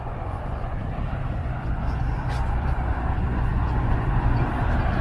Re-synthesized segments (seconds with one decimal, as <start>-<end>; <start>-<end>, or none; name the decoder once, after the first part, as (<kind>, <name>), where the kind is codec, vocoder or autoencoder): 0.0-0.8 (vocoder, Vocos); 1.4-4.4